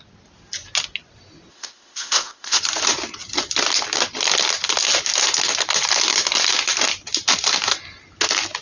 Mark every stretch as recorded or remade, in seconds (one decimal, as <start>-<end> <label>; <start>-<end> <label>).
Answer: 0.0-1.5 recorded; 1.5-2.6 remade; 2.6-8.6 recorded